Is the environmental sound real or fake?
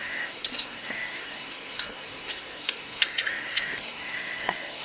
fake